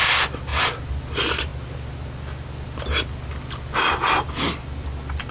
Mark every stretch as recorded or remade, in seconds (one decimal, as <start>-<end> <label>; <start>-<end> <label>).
0.0-5.3 recorded